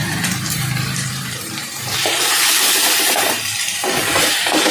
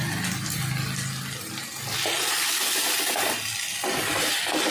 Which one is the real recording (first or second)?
second